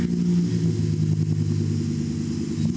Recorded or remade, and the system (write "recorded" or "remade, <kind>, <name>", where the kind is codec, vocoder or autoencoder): recorded